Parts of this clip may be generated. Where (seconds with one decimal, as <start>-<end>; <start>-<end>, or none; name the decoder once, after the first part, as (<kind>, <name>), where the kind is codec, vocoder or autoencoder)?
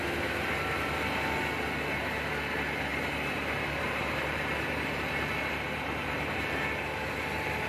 2.9-7.7 (vocoder, BigVGAN v2)